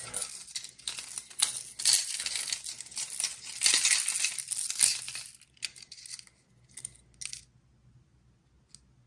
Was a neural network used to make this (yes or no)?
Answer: no